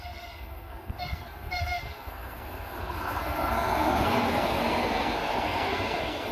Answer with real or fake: fake